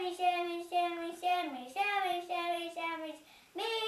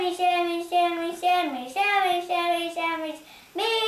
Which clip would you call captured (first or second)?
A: second